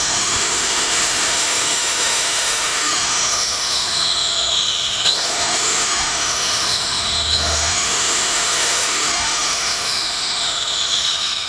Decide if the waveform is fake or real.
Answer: fake